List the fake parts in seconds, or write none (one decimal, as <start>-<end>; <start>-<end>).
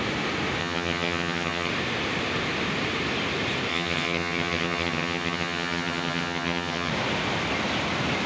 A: 0.6-1.7; 3.7-6.9